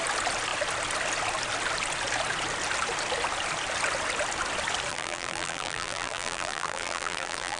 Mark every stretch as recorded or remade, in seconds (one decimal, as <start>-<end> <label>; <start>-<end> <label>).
0.0-4.9 recorded; 4.9-7.6 remade